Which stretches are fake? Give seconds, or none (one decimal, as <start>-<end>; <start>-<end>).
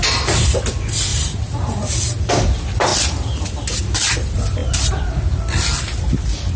1.1-1.9